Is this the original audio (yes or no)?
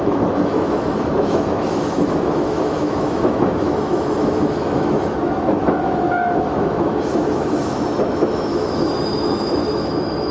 no